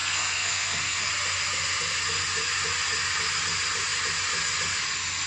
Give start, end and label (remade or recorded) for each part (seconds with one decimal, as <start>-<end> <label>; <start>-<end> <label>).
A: 0.0-1.1 remade; 1.1-5.3 recorded